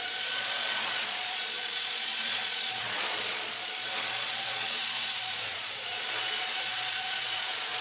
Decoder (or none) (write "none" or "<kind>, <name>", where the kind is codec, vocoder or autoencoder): vocoder, Vocos